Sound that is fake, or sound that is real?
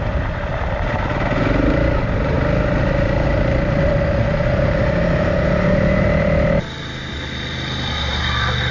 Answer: real